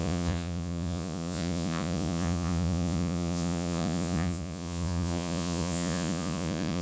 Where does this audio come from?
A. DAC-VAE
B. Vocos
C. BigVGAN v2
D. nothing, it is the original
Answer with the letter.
B